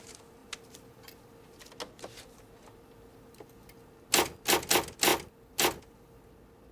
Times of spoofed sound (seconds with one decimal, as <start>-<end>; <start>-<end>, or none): none